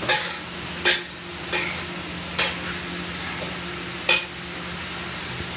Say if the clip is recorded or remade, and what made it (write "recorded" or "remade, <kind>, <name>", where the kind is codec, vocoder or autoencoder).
recorded